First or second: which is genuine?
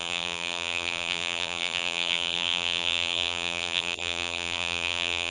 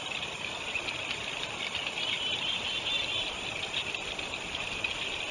second